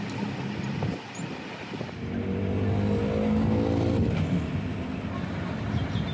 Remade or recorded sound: recorded